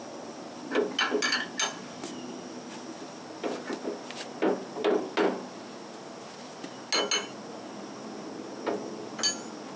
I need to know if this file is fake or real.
real